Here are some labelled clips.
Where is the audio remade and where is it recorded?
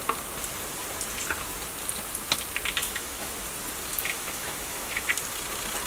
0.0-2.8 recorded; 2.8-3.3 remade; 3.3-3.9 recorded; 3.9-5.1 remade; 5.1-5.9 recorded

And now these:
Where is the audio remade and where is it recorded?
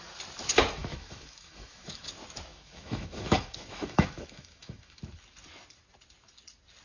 0.0-0.8 recorded; 0.8-2.1 remade; 2.1-2.5 recorded; 2.5-5.0 remade; 5.0-6.8 recorded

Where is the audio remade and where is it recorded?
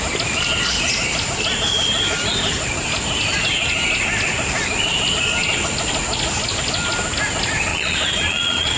0.0-7.7 recorded; 7.7-8.8 remade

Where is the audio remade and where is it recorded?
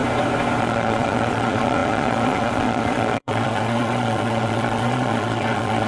0.0-0.6 recorded; 0.6-5.9 remade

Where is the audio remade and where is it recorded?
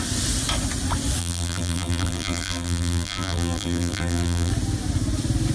0.0-1.2 recorded; 1.2-4.5 remade; 4.5-5.5 recorded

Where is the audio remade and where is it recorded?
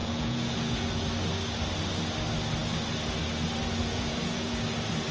0.0-0.9 remade; 0.9-3.8 recorded; 3.8-4.5 remade; 4.5-5.1 recorded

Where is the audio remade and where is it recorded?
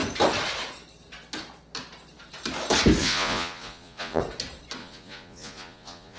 0.0-3.0 recorded; 3.0-4.2 remade; 4.2-4.8 recorded; 4.8-6.2 remade